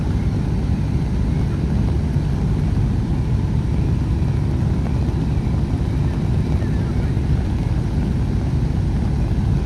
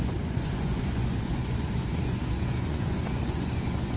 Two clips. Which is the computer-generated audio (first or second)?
second